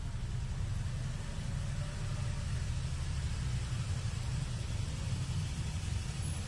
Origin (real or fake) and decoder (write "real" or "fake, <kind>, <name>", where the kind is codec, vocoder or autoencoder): real